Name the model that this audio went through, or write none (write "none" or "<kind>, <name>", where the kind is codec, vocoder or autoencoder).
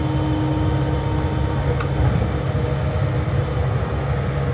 none